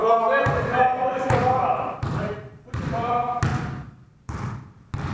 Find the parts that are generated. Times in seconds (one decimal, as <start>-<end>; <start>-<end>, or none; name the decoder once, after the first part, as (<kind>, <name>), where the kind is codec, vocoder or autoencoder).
0.0-3.1 (vocoder, BigVGAN v2); 3.5-4.3